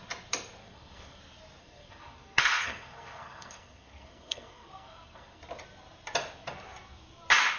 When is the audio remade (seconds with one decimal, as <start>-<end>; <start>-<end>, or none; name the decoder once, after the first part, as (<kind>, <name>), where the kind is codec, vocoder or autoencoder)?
0.6-1.2 (codec, SNAC); 1.6-5.4